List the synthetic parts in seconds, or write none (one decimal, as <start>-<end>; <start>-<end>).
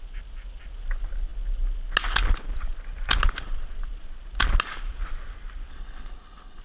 5.7-6.6